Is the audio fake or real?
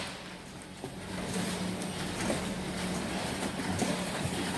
real